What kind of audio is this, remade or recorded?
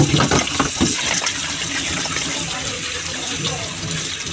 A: recorded